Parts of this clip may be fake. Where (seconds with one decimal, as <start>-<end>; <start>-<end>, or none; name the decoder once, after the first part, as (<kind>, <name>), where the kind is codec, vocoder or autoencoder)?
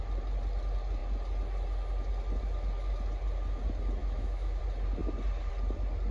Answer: 4.0-4.6 (autoencoder, DAC-VAE)